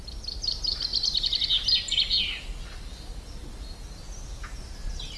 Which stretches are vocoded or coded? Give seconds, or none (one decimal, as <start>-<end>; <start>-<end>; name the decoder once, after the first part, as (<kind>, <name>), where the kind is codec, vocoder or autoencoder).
none